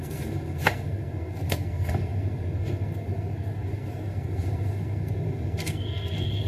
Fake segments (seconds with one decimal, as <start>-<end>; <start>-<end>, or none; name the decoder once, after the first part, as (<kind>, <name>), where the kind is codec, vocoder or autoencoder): 0.0-6.5 (codec, SNAC)